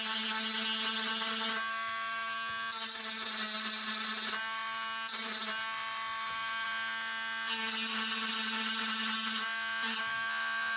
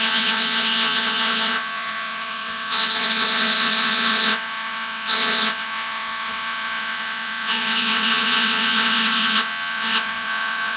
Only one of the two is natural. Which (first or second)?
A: first